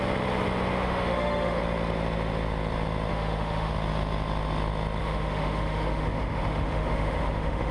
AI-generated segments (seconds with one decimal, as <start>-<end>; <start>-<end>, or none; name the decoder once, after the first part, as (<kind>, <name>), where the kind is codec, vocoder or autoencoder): 0.8-1.6 (autoencoder, DAC-VAE); 3.1-3.7; 5.0-7.7